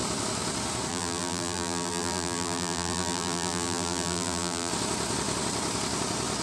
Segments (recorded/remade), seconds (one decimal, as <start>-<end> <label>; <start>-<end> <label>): 0.0-0.9 recorded; 0.9-4.7 remade; 4.7-6.4 recorded